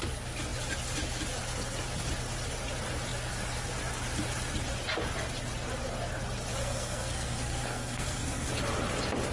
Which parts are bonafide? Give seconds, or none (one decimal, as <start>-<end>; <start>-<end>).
0.0-6.6; 8.5-9.3